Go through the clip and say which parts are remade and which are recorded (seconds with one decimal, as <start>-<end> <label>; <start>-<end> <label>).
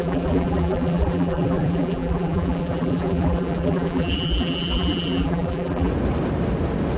0.0-5.9 remade; 5.9-7.0 recorded